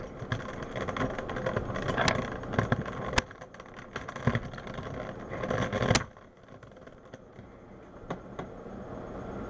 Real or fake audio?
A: real